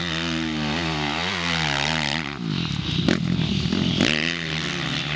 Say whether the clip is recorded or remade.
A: recorded